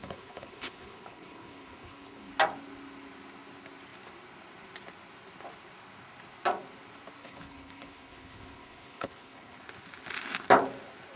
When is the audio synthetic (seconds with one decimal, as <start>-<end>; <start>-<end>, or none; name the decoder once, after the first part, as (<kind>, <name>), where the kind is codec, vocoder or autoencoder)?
0.0-2.3 (codec, HILCodec); 7.2-9.6